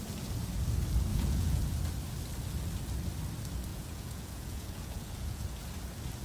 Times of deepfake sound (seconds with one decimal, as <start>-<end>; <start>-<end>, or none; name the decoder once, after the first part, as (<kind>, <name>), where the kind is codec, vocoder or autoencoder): 1.1-1.6 (vocoder, Vocos); 3.7-5.7